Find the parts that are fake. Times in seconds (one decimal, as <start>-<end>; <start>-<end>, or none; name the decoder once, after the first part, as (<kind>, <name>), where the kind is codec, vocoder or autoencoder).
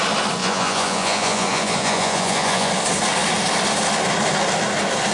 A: 0.4-2.7 (vocoder, Vocos)